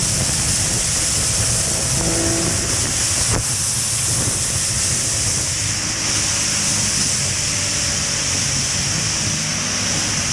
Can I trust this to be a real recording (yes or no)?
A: yes